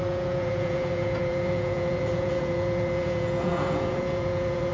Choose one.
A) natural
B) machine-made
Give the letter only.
B